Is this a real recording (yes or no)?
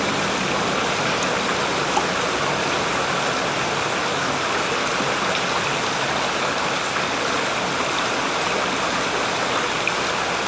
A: yes